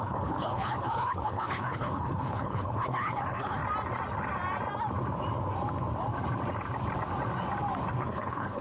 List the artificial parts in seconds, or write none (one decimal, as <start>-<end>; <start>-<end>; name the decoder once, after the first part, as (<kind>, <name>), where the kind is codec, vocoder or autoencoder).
0.0-3.6 (codec, HILCodec); 7.9-8.6